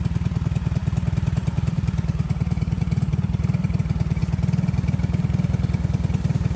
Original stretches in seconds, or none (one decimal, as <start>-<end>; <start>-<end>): 4.2-6.6